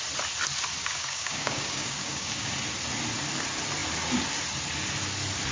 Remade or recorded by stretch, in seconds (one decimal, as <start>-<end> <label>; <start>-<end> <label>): 0.0-0.8 recorded; 0.8-2.5 remade; 2.5-5.5 recorded